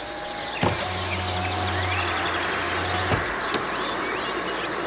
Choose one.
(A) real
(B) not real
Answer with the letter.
A